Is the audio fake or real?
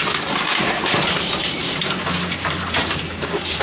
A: fake